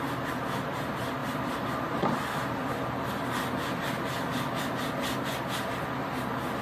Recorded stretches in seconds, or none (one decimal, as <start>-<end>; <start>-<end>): 0.0-6.6